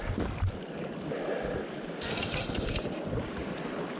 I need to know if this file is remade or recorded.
recorded